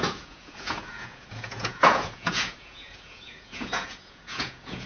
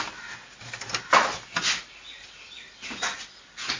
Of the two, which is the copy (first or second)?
first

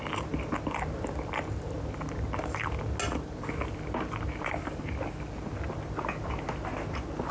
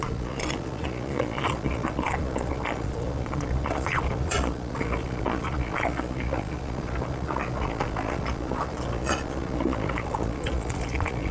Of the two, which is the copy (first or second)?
second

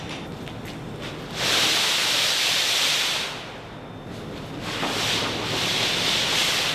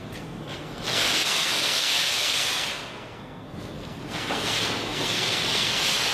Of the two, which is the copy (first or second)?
second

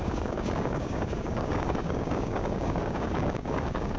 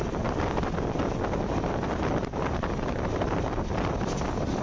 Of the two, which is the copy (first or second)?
first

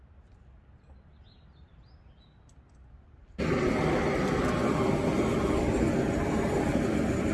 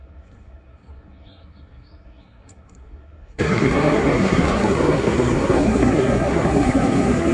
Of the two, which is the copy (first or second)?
second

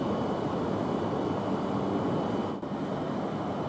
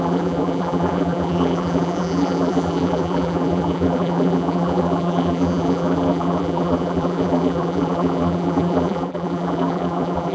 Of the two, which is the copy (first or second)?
second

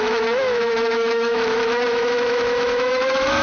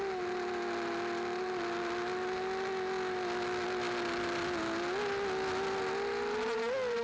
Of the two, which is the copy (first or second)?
first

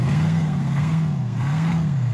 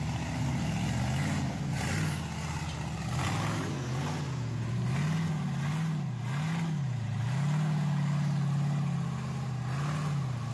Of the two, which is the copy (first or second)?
first